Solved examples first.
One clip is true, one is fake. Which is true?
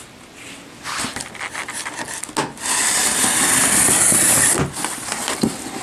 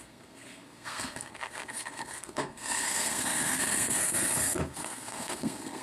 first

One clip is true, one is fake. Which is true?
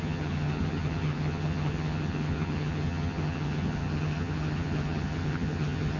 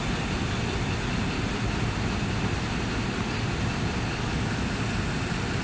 second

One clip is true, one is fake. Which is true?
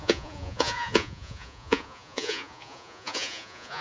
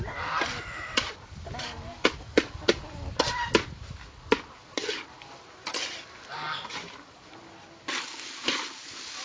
second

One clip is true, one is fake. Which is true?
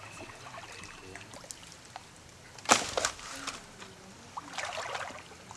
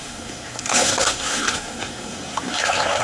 first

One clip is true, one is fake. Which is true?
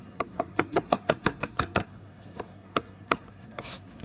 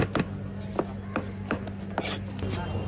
second